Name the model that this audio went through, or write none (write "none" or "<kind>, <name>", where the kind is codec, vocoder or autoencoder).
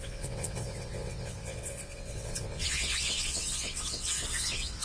vocoder, WaveNeXt